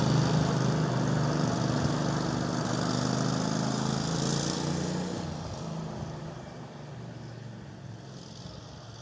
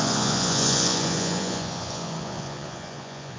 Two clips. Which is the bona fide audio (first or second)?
first